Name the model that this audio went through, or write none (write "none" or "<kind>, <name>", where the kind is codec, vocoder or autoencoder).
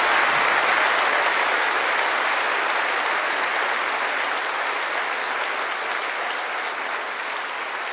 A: none